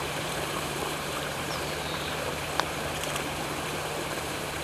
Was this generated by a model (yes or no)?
yes